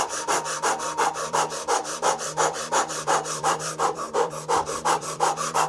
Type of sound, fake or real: fake